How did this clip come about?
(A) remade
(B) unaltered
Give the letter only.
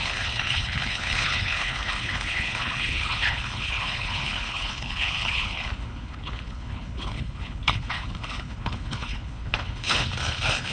A